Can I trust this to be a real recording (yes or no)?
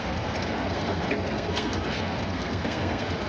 no